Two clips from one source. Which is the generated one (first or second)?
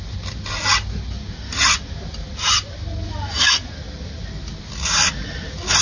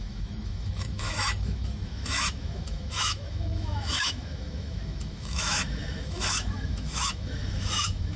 second